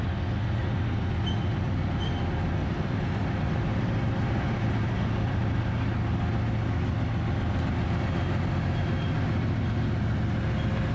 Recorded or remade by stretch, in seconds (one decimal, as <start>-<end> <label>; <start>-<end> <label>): 0.0-2.6 recorded; 2.6-5.6 remade; 5.6-10.9 recorded